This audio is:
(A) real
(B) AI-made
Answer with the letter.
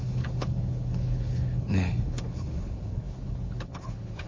B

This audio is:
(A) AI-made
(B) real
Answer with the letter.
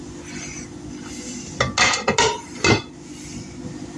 B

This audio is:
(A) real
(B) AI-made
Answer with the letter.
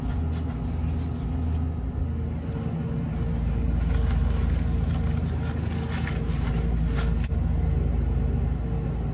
A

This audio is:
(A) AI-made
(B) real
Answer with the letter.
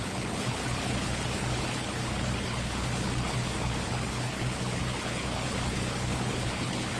A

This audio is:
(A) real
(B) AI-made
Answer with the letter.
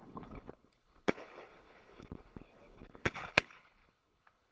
B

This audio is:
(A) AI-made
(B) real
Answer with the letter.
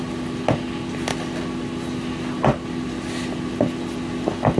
B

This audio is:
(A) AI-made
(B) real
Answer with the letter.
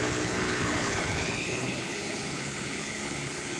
A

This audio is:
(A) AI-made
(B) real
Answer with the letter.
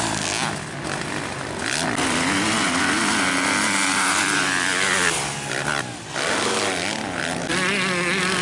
B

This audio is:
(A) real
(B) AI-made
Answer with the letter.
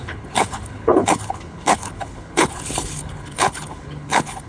B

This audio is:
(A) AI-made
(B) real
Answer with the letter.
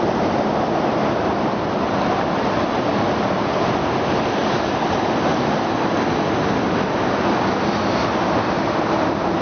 B